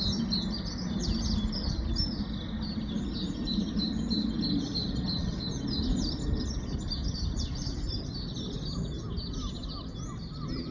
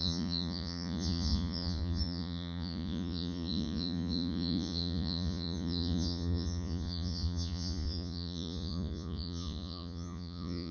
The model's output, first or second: second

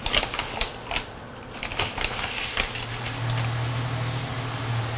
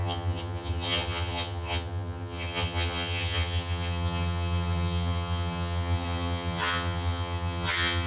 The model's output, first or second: second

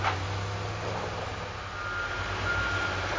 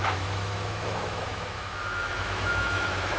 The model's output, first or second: second